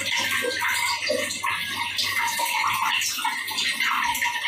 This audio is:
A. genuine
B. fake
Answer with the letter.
A